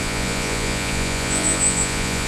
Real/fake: fake